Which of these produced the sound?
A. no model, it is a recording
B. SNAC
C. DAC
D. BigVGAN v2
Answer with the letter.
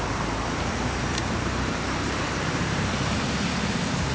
D